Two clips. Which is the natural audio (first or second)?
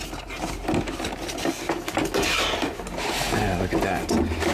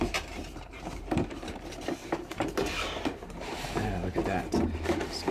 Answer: first